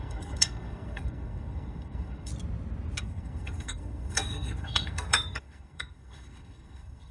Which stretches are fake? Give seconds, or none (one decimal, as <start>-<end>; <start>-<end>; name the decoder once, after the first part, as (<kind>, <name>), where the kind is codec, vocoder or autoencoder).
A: 0.0-2.3 (codec, SNAC); 3.0-7.1

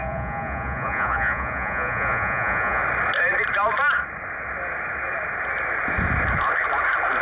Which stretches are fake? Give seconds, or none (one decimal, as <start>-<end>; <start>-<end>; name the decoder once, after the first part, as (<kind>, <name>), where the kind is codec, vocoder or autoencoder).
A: 0.0-2.8 (vocoder, Vocos)